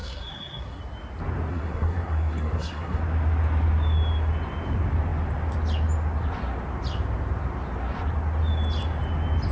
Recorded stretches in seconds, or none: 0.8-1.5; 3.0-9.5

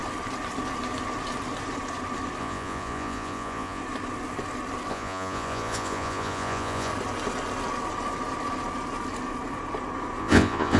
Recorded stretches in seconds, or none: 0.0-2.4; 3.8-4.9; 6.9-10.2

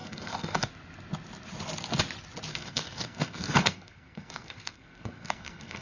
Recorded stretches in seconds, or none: 0.7-2.5

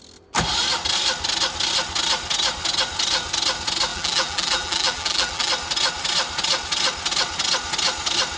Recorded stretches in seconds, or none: 0.0-3.9; 5.5-8.4